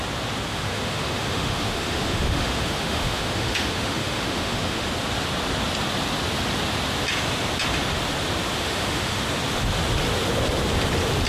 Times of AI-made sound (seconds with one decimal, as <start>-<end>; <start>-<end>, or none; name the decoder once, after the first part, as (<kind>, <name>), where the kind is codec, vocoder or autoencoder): 0.5-4.9 (autoencoder, DAC-VAE); 8.6-9.2